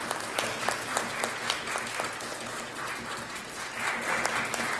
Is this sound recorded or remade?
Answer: recorded